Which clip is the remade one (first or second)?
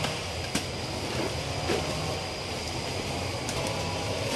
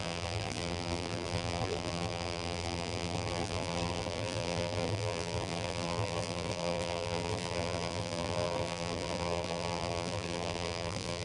second